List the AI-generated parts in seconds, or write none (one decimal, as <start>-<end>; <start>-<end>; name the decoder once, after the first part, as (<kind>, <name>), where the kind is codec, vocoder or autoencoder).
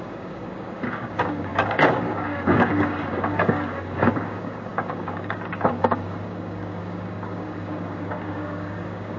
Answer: 0.0-9.2 (codec, DAC)